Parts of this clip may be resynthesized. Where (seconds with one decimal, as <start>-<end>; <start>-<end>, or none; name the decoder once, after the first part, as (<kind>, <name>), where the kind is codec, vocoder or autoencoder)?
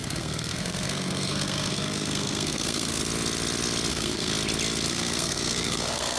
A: 0.0-3.0 (codec, SNAC); 3.9-4.3; 4.9-6.2